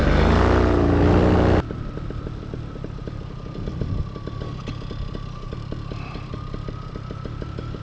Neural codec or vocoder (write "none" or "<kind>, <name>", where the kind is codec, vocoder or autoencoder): none